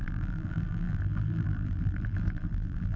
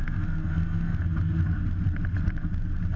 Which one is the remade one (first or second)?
first